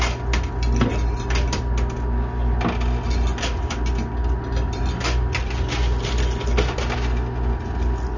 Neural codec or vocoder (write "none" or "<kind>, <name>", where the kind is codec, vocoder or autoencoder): none